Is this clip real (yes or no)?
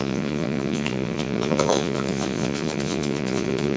no